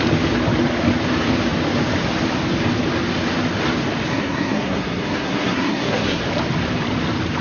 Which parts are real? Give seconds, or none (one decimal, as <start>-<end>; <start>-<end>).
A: 0.0-4.1; 6.2-7.4